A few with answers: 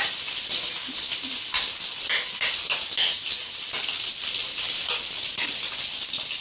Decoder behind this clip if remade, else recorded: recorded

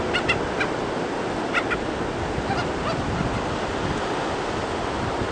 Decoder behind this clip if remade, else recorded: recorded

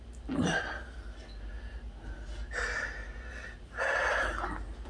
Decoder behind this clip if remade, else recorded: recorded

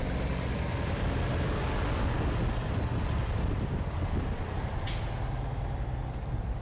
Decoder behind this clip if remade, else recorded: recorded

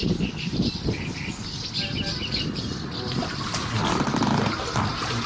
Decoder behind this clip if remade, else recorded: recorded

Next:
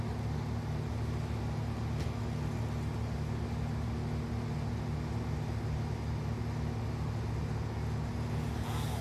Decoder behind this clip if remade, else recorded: recorded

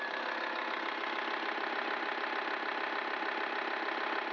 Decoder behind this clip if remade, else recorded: recorded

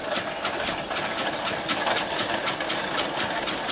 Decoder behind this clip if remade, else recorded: recorded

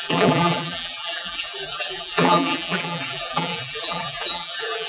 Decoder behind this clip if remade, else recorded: remade, vocoder, BigVGAN v2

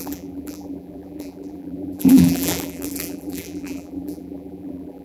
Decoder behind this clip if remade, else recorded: remade, vocoder, BigVGAN v2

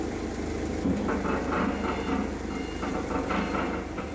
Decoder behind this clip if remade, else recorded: remade, vocoder, BigVGAN v2